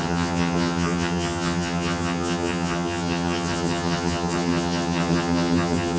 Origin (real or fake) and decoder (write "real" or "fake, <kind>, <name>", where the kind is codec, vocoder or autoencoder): fake, vocoder, HiFi-GAN